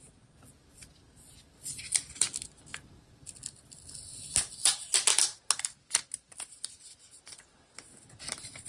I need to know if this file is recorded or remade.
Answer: recorded